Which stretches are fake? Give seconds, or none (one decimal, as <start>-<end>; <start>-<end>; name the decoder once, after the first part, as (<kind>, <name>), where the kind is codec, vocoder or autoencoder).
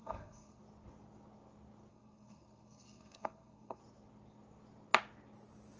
0.0-0.6 (codec, SNAC); 1.9-3.8